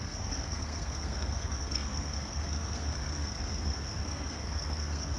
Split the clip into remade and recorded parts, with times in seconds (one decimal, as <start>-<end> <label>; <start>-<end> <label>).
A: 0.0-5.2 remade